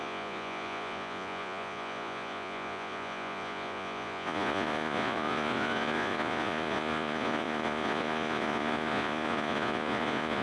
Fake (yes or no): yes